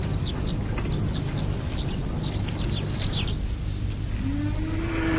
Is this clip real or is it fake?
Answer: real